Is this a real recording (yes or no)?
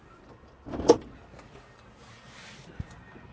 yes